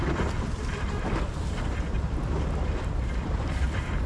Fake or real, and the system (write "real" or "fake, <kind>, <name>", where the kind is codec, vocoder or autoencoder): fake, vocoder, BigVGAN v2